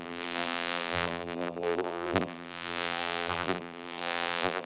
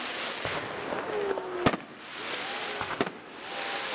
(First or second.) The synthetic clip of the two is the first